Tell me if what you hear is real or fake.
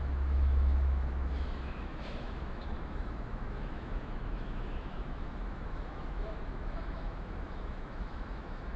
fake